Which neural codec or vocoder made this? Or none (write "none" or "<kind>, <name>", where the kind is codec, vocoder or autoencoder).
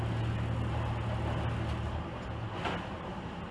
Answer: none